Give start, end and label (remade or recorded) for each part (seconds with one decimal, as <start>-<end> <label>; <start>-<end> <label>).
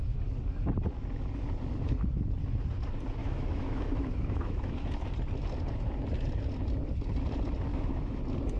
0.0-3.2 recorded; 3.2-5.0 remade; 5.0-7.7 recorded; 7.7-8.2 remade; 8.2-8.6 recorded